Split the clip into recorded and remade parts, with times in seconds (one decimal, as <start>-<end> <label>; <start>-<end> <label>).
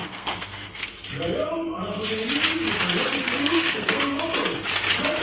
0.0-0.9 remade; 0.9-3.2 recorded; 3.2-4.2 remade; 4.2-5.2 recorded